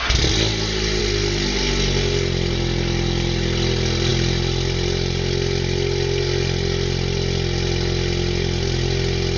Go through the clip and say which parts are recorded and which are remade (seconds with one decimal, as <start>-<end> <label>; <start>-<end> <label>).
0.0-9.4 recorded